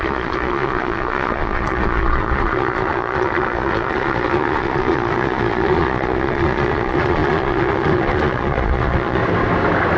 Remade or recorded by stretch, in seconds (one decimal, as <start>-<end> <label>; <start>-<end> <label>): 0.0-9.2 remade; 9.2-10.0 recorded